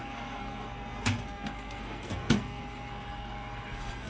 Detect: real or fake fake